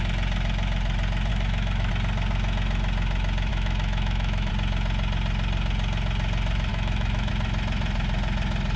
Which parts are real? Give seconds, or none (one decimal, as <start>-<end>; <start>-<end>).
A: 0.0-1.3; 1.9-3.5; 4.5-6.7; 7.3-8.8